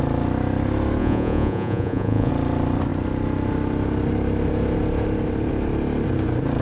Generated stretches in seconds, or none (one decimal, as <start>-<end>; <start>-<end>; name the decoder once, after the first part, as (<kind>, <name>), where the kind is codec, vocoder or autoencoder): 1.0-2.3 (vocoder, Vocos)